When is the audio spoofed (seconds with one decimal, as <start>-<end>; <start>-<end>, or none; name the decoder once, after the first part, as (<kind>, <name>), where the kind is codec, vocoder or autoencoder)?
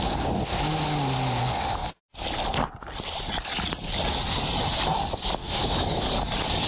5.4-6.0 (autoencoder, DAC-VAE)